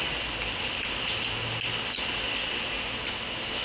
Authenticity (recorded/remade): recorded